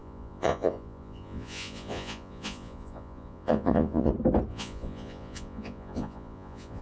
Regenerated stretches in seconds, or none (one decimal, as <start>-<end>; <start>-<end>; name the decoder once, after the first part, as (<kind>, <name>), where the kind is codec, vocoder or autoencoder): 0.0-4.1 (vocoder, Vocos); 4.5-6.8